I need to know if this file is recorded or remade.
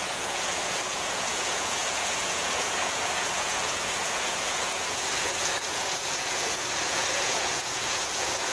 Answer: remade